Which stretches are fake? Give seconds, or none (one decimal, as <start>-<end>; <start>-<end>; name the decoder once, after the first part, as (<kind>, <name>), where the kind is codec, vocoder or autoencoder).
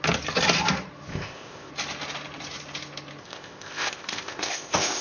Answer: 1.1-1.7 (codec, ZipCodec); 3.2-5.0